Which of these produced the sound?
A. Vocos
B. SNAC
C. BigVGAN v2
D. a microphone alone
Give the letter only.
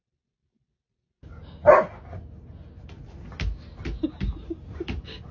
D